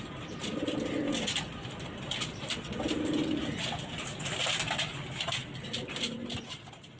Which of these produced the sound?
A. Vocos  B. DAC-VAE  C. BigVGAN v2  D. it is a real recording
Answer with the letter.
D